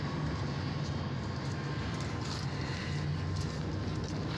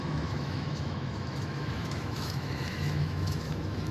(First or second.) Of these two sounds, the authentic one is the first